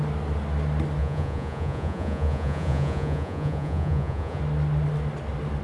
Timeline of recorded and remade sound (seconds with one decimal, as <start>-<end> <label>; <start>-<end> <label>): 0.0-1.0 recorded; 1.0-4.4 remade; 4.4-5.6 recorded